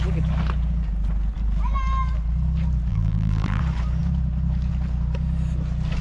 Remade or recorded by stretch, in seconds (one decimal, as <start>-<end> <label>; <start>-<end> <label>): 0.0-2.9 recorded; 2.9-3.6 remade; 3.6-6.0 recorded